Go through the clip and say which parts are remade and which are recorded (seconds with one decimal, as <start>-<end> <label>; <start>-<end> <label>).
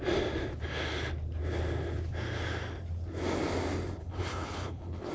0.0-4.0 recorded; 4.0-5.1 remade